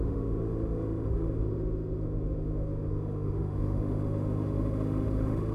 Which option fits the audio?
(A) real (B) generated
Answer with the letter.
B